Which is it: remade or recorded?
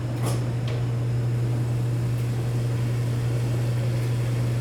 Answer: recorded